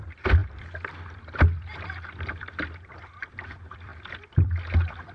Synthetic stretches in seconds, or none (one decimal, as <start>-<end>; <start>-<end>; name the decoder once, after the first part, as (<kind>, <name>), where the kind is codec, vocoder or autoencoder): 0.0-3.9 (vocoder, BigVGAN v2)